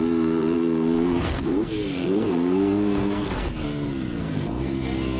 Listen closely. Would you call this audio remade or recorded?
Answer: remade